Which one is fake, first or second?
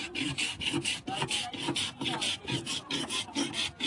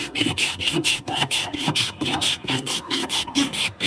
second